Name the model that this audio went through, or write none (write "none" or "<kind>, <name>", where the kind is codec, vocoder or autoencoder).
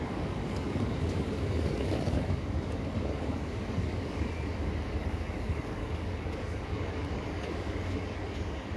codec, DAC